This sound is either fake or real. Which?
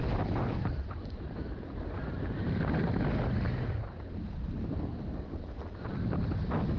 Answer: real